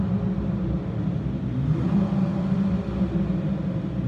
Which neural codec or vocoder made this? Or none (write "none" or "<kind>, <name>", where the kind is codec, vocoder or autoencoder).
none